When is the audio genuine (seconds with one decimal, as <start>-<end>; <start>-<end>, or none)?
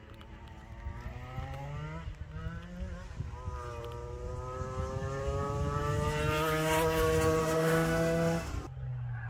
0.0-7.4; 8.5-9.3